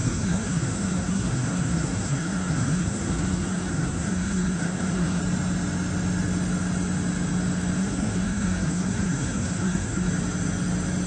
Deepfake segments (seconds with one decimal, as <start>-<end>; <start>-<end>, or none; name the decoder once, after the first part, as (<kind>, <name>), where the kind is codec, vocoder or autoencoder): 0.0-5.2 (codec, SNAC); 7.8-10.1